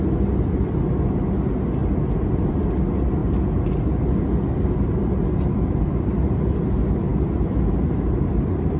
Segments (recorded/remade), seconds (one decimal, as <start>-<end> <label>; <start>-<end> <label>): 0.0-8.8 recorded